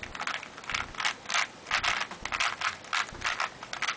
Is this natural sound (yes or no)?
yes